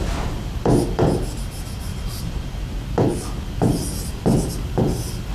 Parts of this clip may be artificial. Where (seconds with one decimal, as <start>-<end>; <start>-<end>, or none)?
1.9-3.1